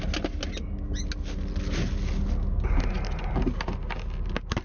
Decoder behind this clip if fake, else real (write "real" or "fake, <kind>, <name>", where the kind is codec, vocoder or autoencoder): real